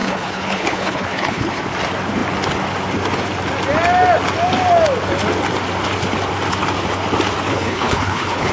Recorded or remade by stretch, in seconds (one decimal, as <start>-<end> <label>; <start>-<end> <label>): 0.0-1.6 remade; 1.6-7.5 recorded; 7.5-8.5 remade